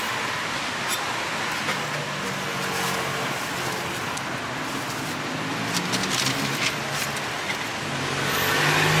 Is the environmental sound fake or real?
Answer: real